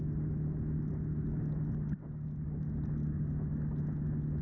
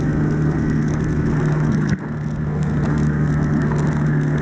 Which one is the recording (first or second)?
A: first